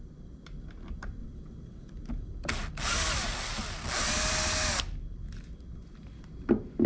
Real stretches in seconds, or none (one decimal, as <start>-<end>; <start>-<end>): 0.0-1.2; 1.9-6.9